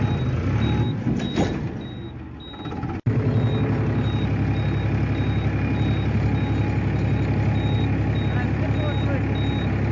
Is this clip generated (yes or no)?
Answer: no